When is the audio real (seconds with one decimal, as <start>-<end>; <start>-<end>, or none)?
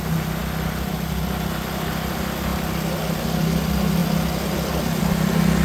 0.0-5.6